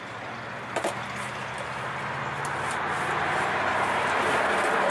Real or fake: real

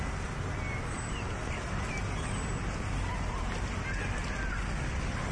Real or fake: real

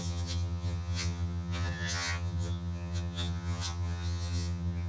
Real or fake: fake